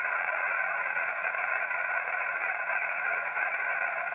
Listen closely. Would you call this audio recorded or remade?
remade